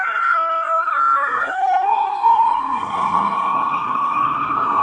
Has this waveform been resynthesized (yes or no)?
yes